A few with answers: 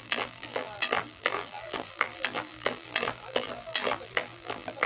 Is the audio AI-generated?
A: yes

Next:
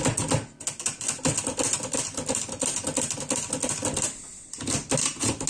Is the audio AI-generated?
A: no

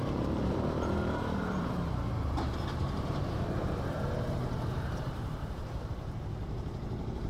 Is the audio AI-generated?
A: yes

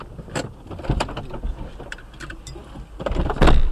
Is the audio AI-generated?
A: no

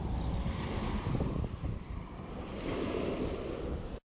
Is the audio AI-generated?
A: yes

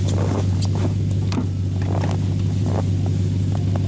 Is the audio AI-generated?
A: no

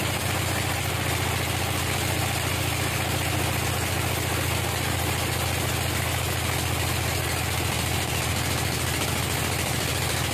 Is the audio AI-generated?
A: no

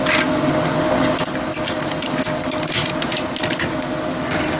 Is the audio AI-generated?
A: no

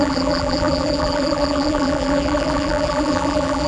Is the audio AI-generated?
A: yes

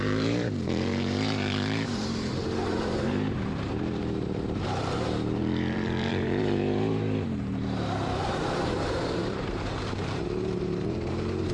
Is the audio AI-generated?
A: yes